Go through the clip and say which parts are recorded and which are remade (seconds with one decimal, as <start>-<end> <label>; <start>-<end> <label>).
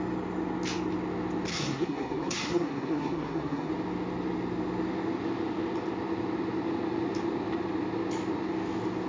0.0-1.5 recorded; 1.5-3.7 remade; 3.7-9.1 recorded